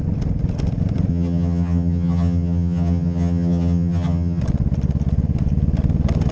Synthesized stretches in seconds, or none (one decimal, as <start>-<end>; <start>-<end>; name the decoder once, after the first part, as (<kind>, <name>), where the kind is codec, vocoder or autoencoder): 1.1-4.4 (vocoder, HiFi-GAN)